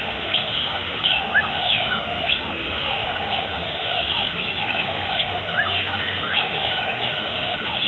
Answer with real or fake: fake